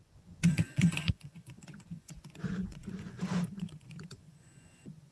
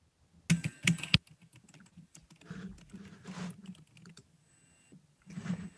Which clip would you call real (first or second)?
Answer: second